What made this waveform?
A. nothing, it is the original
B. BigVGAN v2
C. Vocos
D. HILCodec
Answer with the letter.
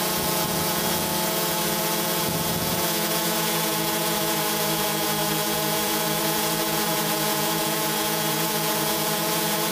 C